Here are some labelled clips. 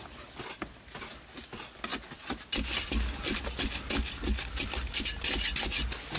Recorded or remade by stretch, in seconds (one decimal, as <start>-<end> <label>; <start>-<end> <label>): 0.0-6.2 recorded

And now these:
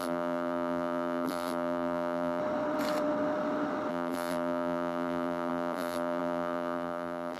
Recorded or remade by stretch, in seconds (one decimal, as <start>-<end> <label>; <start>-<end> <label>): 0.0-2.4 remade; 2.4-3.9 recorded; 3.9-7.4 remade

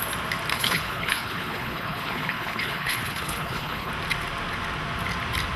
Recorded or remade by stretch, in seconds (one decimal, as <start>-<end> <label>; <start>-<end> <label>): 0.0-0.5 recorded; 0.5-3.9 remade; 3.9-5.6 recorded

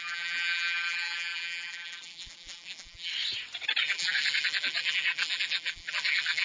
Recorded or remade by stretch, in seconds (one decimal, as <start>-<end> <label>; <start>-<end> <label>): 0.0-3.1 remade; 3.1-3.8 recorded; 3.8-6.4 remade